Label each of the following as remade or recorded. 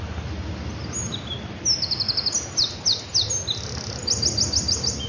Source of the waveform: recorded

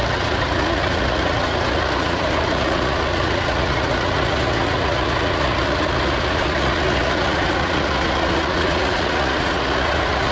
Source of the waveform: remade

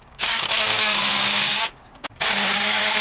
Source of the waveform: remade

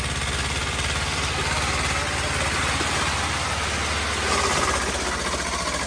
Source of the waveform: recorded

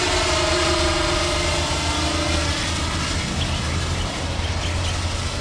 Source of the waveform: recorded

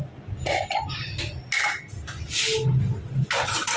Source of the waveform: recorded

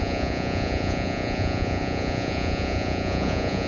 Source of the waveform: remade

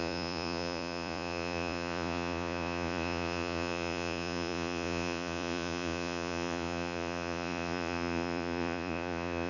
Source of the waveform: remade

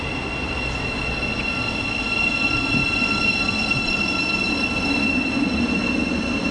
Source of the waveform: recorded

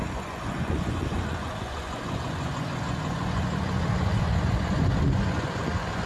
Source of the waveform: remade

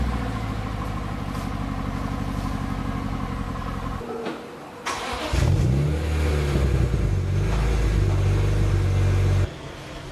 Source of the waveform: recorded